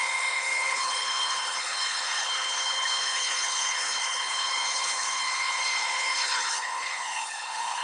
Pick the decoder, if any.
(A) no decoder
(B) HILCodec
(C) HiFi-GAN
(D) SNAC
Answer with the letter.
B